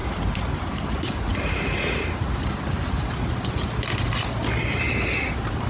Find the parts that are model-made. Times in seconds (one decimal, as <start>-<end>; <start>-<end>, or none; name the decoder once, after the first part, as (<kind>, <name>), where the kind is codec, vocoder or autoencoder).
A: 0.7-1.3 (vocoder, BigVGAN v2); 4.7-5.7